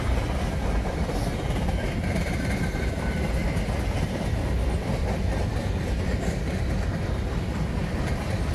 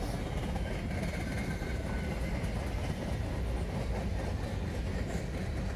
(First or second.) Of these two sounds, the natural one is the second